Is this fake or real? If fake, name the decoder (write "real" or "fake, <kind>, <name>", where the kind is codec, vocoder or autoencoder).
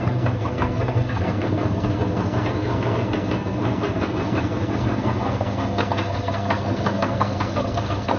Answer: fake, codec, SNAC